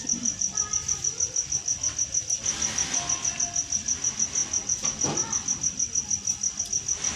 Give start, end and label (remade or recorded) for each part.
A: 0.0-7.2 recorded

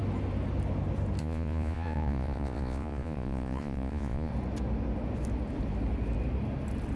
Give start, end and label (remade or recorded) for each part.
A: 0.0-1.2 recorded; 1.2-4.3 remade; 4.3-7.0 recorded

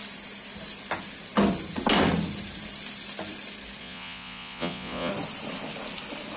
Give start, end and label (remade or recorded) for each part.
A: 0.0-3.8 recorded; 3.8-5.1 remade; 5.1-6.4 recorded

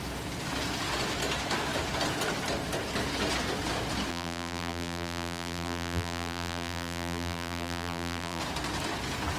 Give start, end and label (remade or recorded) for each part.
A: 0.0-4.1 recorded; 4.1-8.4 remade; 8.4-9.4 recorded

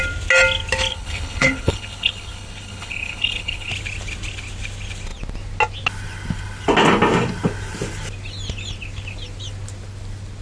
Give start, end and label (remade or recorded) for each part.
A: 0.0-0.9 recorded; 0.9-3.7 remade; 3.7-10.4 recorded

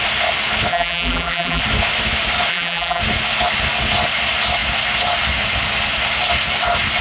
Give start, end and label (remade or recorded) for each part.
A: 0.0-0.7 recorded; 0.7-1.6 remade; 1.6-2.5 recorded; 2.5-3.0 remade; 3.0-7.0 recorded

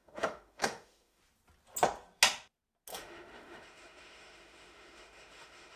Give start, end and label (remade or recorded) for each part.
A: 0.0-1.2 remade; 1.2-2.9 recorded; 2.9-5.8 remade